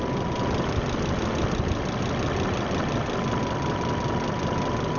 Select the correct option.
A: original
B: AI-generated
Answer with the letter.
A